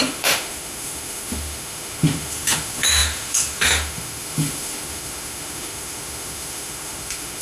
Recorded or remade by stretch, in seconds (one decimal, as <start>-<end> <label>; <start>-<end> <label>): 0.0-7.4 remade